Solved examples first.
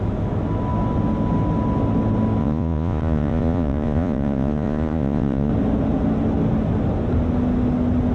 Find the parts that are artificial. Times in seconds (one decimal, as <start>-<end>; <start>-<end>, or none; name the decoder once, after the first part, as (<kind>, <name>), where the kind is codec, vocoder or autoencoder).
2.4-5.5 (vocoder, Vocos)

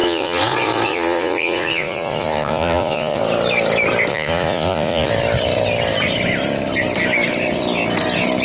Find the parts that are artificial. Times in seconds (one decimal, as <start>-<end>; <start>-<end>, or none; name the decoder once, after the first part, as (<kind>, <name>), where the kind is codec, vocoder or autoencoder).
0.0-3.2 (vocoder, Vocos); 4.1-5.1

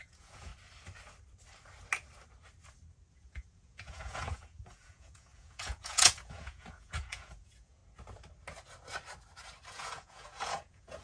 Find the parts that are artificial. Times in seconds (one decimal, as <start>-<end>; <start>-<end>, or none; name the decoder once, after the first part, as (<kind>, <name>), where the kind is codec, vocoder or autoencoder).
0.0-0.5 (vocoder, Vocos); 3.1-7.8; 9.7-11.0

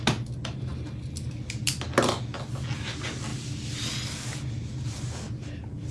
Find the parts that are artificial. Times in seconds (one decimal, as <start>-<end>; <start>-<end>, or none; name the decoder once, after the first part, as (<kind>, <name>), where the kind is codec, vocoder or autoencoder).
none